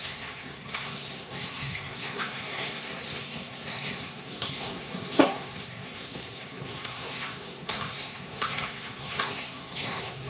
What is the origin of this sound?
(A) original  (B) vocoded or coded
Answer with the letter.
B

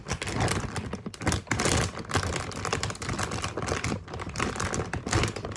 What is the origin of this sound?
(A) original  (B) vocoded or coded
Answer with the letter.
A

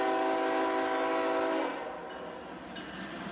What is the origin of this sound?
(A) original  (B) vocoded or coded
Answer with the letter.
A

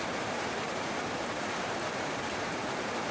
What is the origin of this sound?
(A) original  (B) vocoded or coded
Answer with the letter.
B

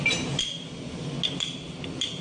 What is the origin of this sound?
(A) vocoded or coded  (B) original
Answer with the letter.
B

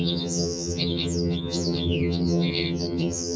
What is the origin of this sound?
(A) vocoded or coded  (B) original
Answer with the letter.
A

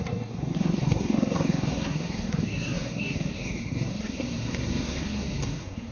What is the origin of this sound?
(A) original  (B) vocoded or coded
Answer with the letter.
B